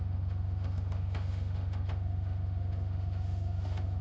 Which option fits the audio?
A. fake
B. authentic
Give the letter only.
A